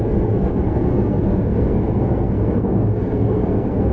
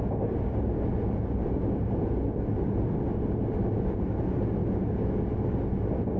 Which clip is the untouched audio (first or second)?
second